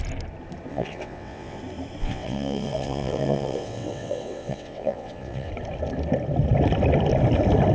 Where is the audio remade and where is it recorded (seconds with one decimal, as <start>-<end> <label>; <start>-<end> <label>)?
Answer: 0.0-0.7 recorded; 0.7-1.6 remade; 1.6-2.0 recorded; 2.0-5.5 remade; 5.5-7.7 recorded